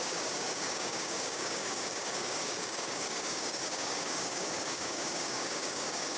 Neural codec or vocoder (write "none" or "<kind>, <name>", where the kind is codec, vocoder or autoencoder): codec, DAC